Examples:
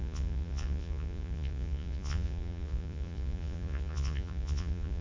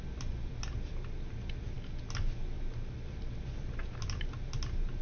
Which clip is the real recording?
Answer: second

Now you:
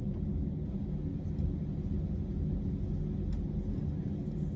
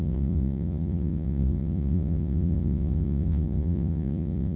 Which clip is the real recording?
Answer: first